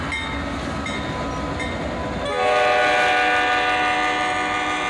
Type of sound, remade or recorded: recorded